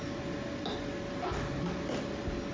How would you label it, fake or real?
real